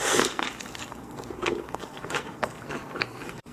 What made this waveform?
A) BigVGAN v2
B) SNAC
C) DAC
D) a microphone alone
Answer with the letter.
B